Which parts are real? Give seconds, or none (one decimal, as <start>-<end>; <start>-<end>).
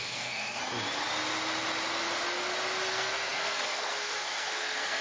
0.6-2.9